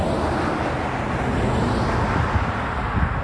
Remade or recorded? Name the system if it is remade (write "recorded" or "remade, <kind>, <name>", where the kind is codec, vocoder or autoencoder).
recorded